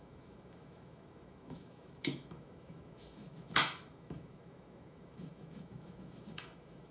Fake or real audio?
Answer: fake